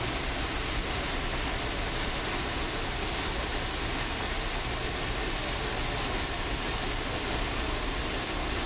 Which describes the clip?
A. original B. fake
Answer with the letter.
A